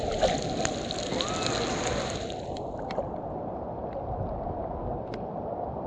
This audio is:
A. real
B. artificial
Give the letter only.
A